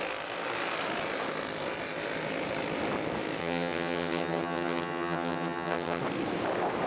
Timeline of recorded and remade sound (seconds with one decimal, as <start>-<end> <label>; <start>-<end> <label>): 0.0-3.4 recorded; 3.4-6.0 remade; 6.0-6.9 recorded